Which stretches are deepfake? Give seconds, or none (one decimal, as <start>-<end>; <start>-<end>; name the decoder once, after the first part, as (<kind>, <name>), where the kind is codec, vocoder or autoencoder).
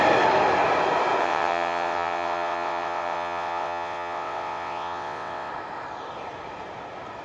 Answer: 1.2-5.5 (vocoder, WaveNeXt)